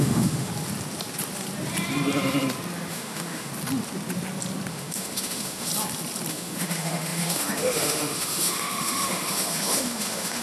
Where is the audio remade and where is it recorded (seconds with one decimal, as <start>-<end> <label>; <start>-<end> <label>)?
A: 0.0-0.5 remade; 0.5-2.9 recorded; 2.9-3.5 remade; 3.5-4.7 recorded; 4.7-5.7 remade; 5.7-6.3 recorded; 6.3-10.4 remade